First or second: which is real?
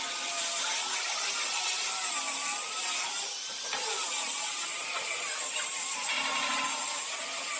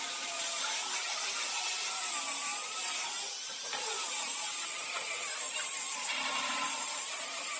first